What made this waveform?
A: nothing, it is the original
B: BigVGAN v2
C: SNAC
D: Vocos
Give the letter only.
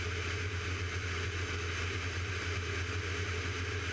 A